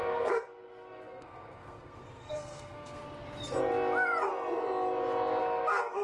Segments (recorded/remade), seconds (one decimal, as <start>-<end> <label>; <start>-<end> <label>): 0.0-3.0 remade; 3.0-5.4 recorded; 5.4-6.0 remade